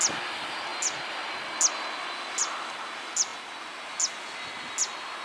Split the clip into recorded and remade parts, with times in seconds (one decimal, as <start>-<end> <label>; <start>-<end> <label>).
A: 0.0-5.2 recorded